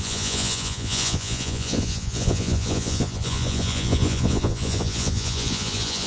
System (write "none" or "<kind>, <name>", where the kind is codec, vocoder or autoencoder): vocoder, Vocos